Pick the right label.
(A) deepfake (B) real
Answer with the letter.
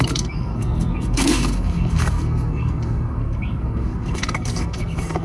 A